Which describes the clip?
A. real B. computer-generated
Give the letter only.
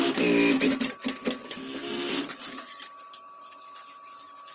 A